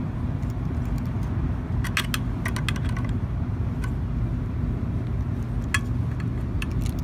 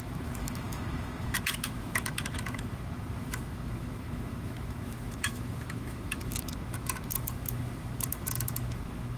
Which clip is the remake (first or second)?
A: second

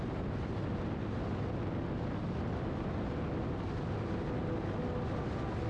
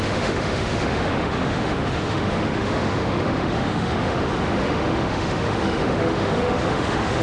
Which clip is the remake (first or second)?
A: second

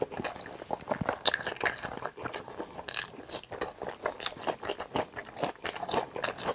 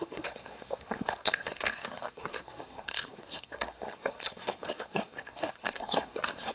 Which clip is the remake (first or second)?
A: second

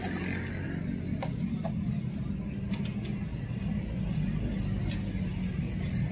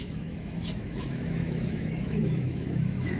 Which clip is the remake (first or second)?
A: second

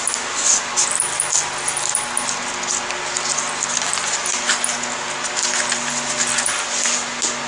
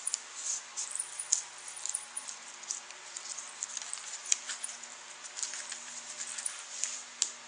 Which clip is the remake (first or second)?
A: second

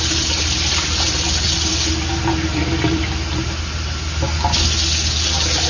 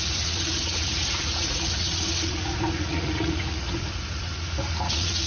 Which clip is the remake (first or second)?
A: second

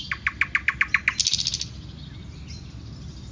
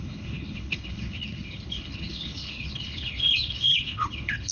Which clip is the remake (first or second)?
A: second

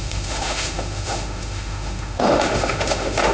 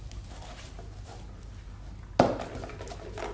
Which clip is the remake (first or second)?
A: first